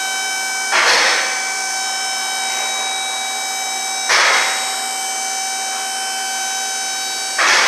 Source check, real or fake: real